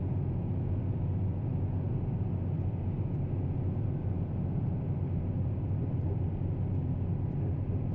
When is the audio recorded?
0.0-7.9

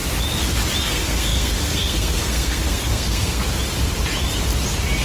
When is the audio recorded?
0.0-0.8; 3.4-5.0